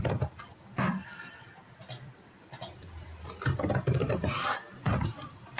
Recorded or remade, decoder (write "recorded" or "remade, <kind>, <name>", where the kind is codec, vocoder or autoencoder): remade, vocoder, BigVGAN v2